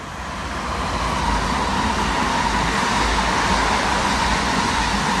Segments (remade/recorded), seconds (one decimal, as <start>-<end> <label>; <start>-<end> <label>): 0.0-4.0 recorded; 4.0-4.8 remade; 4.8-5.2 recorded

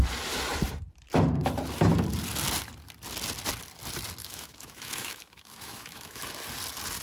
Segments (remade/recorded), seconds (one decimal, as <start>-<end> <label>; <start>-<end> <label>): 0.0-4.2 recorded; 4.2-6.2 remade; 6.2-7.0 recorded

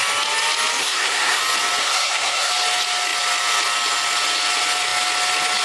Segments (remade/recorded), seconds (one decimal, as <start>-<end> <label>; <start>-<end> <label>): 0.0-0.8 recorded; 0.8-1.4 remade; 1.4-1.8 recorded; 1.8-2.5 remade; 2.5-5.6 recorded

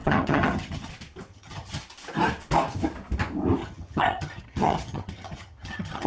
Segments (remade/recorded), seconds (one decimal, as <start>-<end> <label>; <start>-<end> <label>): 0.0-0.9 remade; 0.9-1.3 recorded; 1.3-1.8 remade; 1.8-3.6 recorded; 3.6-6.1 remade

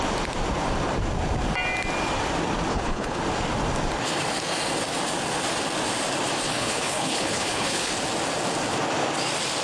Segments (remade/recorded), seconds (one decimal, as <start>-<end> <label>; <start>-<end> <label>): 0.0-2.7 recorded; 2.7-3.2 remade; 3.2-6.6 recorded; 6.6-7.9 remade; 7.9-9.6 recorded

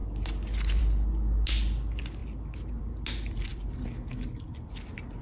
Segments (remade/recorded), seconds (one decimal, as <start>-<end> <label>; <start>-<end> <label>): 0.0-3.5 recorded; 3.5-4.1 remade; 4.1-5.2 recorded

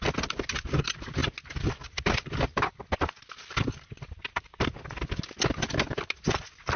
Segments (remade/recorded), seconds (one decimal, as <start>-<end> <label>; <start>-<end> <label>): 0.0-6.8 recorded

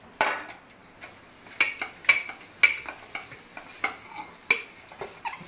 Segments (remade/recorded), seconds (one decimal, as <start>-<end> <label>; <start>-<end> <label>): 0.0-5.5 recorded